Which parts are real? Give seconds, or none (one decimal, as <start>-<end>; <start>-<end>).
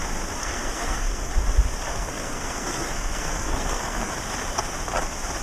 0.0-0.4; 1.3-1.9; 4.1-5.4